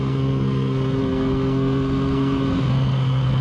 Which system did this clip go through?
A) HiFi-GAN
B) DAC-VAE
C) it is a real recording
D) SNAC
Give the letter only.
D